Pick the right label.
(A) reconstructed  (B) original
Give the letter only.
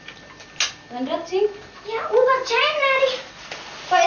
B